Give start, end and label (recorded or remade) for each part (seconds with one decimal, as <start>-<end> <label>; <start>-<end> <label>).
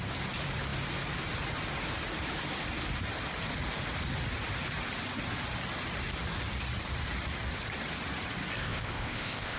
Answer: 0.0-8.6 recorded; 8.6-9.6 remade